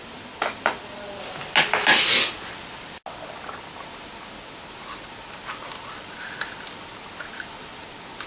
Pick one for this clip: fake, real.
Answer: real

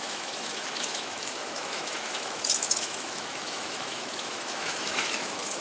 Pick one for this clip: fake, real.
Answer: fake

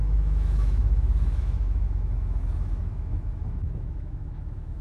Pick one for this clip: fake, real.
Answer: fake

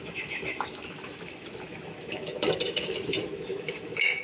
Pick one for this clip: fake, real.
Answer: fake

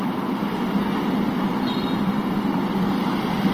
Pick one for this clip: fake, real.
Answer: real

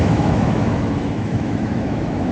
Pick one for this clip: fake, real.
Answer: fake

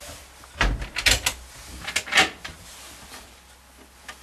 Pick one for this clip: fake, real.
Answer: real